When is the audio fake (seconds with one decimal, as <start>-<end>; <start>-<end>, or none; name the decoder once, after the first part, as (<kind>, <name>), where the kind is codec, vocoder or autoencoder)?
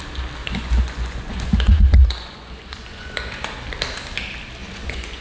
0.4-3.5 (vocoder, Vocos); 4.6-5.2